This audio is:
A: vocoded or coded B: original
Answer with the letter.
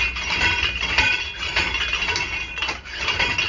B